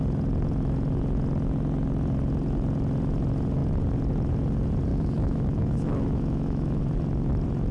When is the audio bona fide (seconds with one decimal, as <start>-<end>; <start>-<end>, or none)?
0.0-4.9; 6.8-7.7